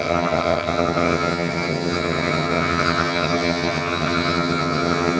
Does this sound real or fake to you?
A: fake